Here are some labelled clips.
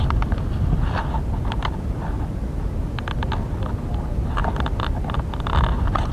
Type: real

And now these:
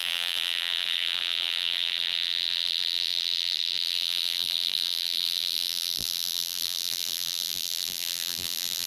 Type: fake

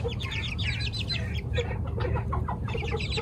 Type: real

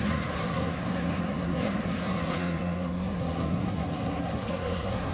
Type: fake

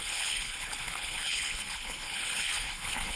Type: fake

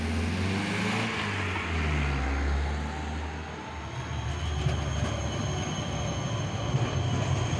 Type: real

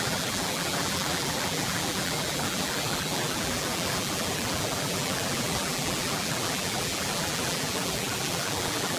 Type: fake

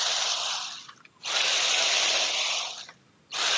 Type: real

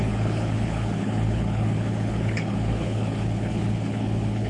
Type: fake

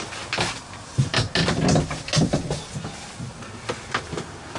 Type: real